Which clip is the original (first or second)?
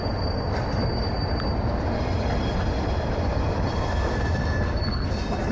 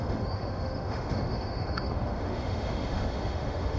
first